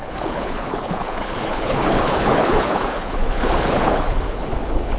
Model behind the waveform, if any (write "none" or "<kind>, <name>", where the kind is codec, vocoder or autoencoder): codec, HILCodec